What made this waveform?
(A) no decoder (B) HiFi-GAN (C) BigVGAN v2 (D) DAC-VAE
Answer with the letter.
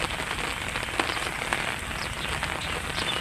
A